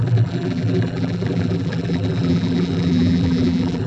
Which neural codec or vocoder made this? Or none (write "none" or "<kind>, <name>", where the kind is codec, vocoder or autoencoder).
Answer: vocoder, BigVGAN v2